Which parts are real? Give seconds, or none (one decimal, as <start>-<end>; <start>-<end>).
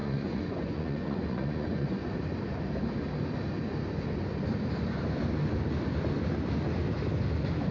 2.0-7.7